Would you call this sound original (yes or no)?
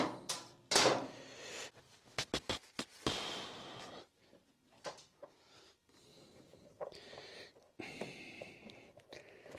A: yes